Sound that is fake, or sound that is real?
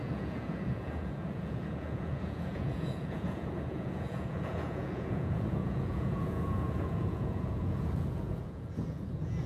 fake